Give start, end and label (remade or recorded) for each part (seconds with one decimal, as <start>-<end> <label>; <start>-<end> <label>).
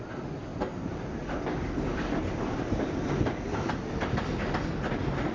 0.0-0.5 recorded; 0.5-1.0 remade; 1.0-1.9 recorded; 1.9-3.7 remade; 3.7-5.3 recorded